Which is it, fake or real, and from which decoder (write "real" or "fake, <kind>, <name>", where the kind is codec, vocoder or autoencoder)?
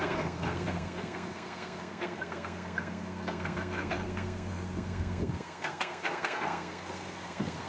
fake, codec, SNAC